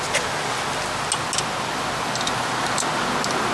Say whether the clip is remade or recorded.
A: recorded